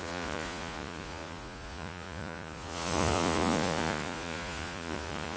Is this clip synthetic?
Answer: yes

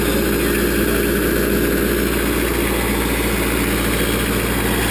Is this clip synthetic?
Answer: no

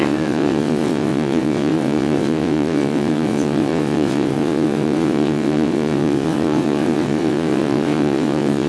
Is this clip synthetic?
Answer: yes